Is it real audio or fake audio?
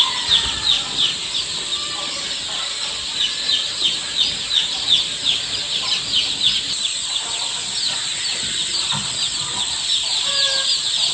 real